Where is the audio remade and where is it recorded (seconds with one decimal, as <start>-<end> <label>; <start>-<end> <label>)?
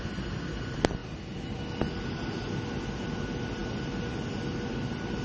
0.0-5.2 recorded